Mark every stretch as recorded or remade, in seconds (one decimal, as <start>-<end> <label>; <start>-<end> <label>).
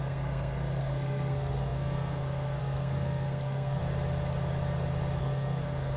0.0-3.8 remade; 3.8-5.2 recorded; 5.2-6.0 remade